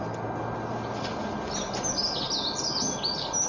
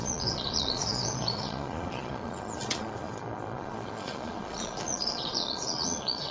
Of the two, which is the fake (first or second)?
second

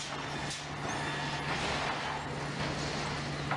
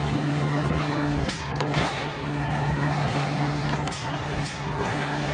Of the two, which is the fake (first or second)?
second